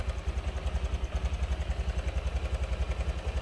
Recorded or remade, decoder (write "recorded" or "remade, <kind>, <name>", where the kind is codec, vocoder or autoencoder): recorded